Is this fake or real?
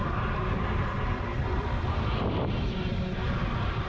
real